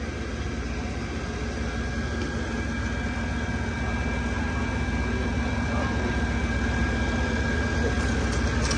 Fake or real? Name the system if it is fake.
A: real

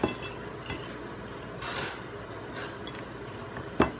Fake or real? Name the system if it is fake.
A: real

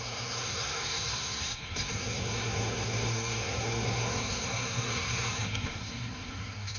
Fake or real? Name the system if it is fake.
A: fake, codec, SNAC